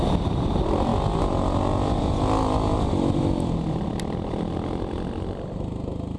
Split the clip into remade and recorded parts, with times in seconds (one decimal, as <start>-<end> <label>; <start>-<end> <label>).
0.0-6.2 recorded